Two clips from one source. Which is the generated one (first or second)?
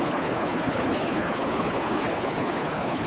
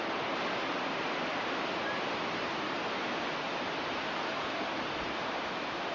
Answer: first